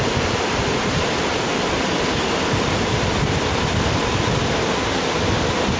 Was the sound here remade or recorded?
recorded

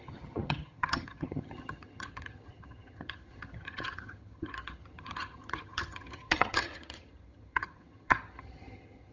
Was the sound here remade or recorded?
remade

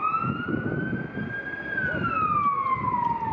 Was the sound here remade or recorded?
recorded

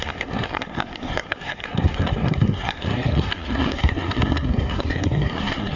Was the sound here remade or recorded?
remade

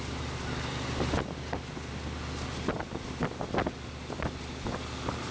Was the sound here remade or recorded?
recorded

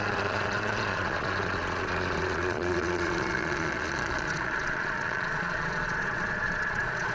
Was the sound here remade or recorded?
remade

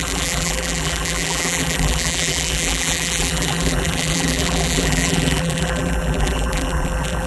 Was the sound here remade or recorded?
remade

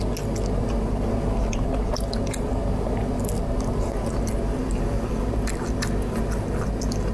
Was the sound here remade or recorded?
recorded